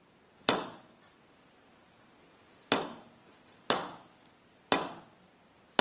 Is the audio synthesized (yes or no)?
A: no